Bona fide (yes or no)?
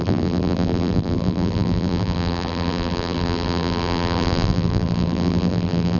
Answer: no